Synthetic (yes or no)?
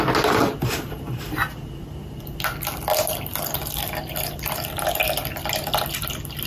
no